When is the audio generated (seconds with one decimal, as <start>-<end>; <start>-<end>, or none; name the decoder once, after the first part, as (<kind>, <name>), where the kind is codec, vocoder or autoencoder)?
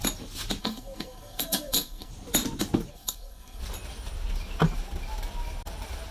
0.6-2.1 (codec, SNAC); 2.9-3.6